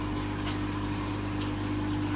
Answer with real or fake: real